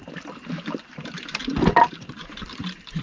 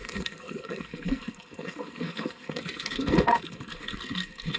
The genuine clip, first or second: first